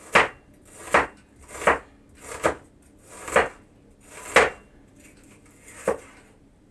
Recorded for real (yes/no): yes